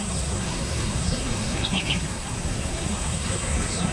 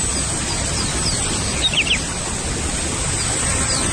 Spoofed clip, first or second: first